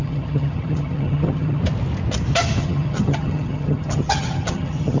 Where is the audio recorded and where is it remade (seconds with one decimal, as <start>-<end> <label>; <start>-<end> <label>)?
0.0-1.6 remade; 1.6-2.6 recorded; 2.6-5.0 remade